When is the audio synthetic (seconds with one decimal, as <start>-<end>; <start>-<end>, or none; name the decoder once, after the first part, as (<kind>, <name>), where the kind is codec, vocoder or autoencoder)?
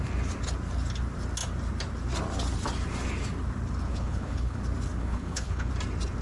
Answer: 3.9-4.6 (codec, HILCodec); 5.0-5.7